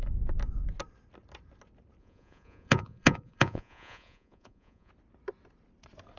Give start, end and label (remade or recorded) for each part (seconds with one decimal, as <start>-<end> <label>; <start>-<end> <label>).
0.0-2.0 recorded; 2.0-4.9 remade; 4.9-6.2 recorded